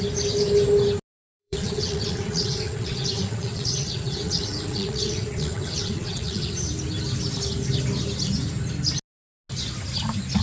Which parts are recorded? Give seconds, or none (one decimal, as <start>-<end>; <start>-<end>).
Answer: 0.0-1.4; 6.5-10.4